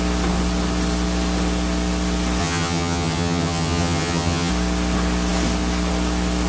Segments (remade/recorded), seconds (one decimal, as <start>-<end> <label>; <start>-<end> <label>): 0.0-2.4 recorded; 2.4-4.5 remade; 4.5-6.5 recorded